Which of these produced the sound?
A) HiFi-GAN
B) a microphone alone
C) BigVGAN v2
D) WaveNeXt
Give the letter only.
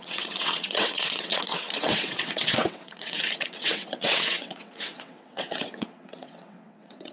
D